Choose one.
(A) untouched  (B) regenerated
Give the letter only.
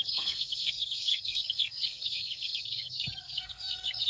B